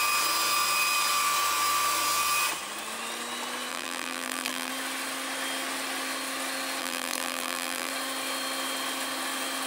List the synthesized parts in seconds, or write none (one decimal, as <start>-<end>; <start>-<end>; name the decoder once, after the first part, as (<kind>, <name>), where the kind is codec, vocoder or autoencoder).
3.7-4.7 (vocoder, BigVGAN v2); 6.8-7.9

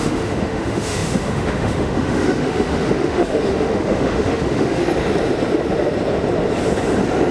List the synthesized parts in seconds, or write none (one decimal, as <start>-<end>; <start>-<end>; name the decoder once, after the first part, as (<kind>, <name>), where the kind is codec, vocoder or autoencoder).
0.0-4.8 (autoencoder, DAC-VAE)

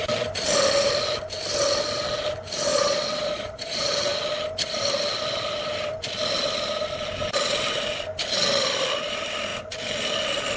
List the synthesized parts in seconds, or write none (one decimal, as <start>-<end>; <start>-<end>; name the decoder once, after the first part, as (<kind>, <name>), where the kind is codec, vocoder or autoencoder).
2.7-3.9 (vocoder, Vocos)

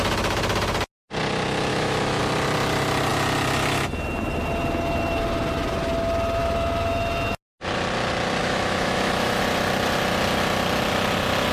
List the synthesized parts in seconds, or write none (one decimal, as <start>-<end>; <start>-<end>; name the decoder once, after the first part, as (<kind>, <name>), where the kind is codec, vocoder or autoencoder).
1.7-2.2 (autoencoder, DAC-VAE); 6.4-6.9; 8.4-9.4

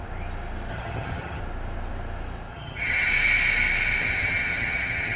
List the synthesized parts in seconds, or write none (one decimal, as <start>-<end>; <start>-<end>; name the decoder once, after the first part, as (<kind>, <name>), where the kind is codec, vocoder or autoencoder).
0.7-1.4 (vocoder, HiFi-GAN); 2.5-3.1; 4.0-5.2

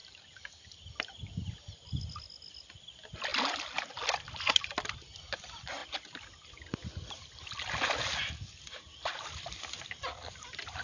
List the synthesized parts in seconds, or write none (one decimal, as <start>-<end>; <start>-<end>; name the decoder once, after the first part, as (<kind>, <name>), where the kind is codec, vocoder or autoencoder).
none

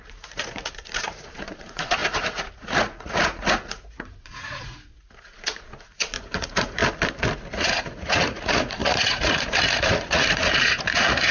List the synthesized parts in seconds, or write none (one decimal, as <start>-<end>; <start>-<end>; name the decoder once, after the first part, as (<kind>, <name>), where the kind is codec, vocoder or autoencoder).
0.0-6.8 (vocoder, Vocos); 7.5-11.3

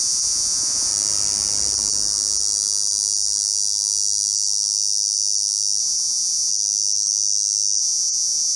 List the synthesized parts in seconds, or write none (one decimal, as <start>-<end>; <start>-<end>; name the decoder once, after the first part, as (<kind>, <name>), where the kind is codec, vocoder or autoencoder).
0.0-0.9 (vocoder, Vocos); 5.8-6.5; 7.8-8.6